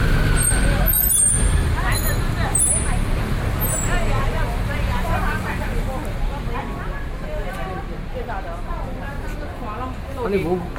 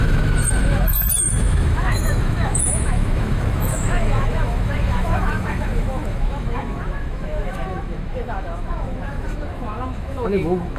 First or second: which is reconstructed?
second